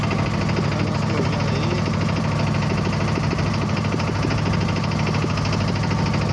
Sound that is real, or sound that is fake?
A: real